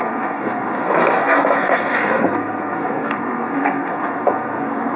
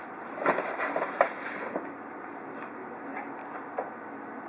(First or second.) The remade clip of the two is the first